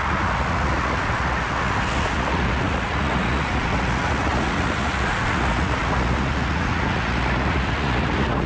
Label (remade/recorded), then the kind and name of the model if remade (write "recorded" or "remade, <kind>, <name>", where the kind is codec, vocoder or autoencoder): remade, vocoder, Vocos